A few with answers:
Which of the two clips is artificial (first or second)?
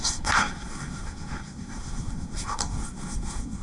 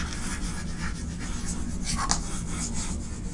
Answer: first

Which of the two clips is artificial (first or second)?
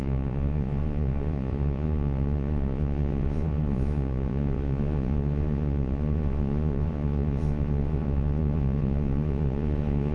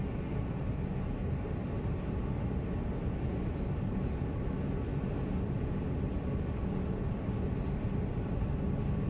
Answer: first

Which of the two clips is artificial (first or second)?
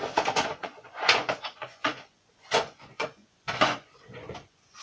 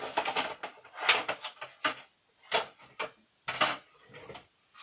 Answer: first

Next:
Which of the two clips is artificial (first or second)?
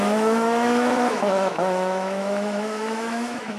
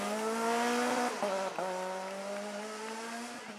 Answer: first